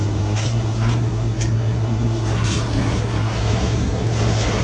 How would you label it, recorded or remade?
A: remade